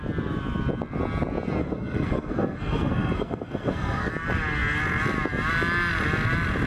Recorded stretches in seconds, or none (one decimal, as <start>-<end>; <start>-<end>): 0.0-1.6; 4.1-6.7